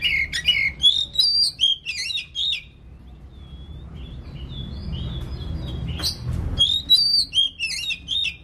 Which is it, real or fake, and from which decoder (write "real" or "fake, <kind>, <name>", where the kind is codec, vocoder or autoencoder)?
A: real